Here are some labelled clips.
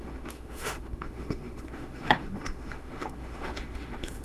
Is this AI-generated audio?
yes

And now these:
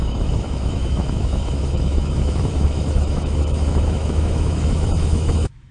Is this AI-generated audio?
yes